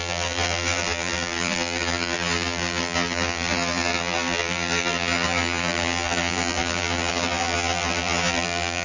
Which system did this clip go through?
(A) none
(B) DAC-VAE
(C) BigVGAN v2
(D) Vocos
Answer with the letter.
C